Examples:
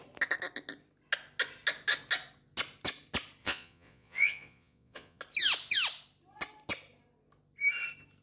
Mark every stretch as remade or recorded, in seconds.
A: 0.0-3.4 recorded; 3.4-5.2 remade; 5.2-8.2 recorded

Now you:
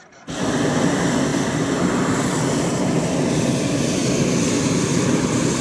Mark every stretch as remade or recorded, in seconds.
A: 0.0-5.6 recorded

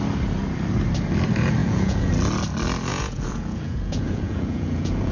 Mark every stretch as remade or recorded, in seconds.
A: 0.0-1.6 recorded; 1.6-2.1 remade; 2.1-2.9 recorded; 2.9-5.1 remade

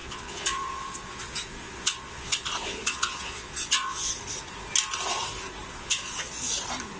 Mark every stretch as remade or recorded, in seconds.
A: 0.0-4.2 remade; 4.2-5.7 recorded; 5.7-6.5 remade; 6.5-7.0 recorded

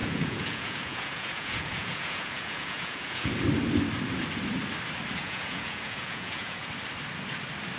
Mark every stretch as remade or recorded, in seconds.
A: 0.0-3.3 remade; 3.3-5.2 recorded; 5.2-6.7 remade; 6.7-7.8 recorded

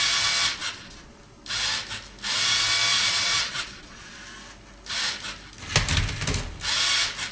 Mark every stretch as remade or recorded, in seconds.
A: 0.0-0.6 recorded; 0.6-1.2 remade; 1.2-2.9 recorded; 2.9-4.2 remade; 4.2-7.3 recorded

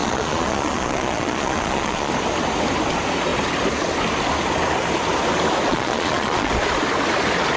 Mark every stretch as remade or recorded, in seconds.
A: 0.0-2.1 remade; 2.1-5.7 recorded; 5.7-6.5 remade; 6.5-7.6 recorded

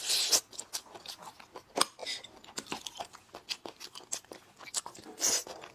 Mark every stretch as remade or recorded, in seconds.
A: 0.0-5.7 recorded